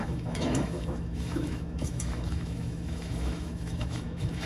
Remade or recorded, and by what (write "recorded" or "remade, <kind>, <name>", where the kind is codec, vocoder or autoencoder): remade, autoencoder, DAC-VAE